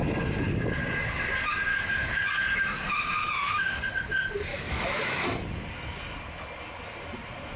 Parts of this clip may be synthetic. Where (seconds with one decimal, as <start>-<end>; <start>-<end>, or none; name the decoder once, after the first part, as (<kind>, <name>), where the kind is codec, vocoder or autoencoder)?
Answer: 1.7-2.3 (autoencoder, DAC-VAE); 3.2-3.8; 4.5-5.2